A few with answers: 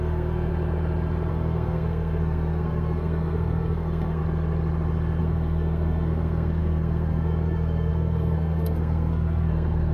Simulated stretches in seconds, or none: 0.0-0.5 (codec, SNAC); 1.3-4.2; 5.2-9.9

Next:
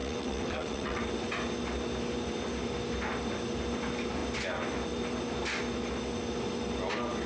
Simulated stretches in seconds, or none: 0.0-1.0 (vocoder, WaveNeXt)

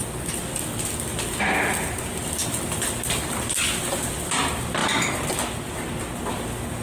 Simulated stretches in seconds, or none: none

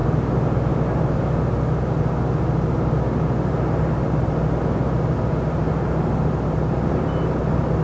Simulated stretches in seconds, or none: none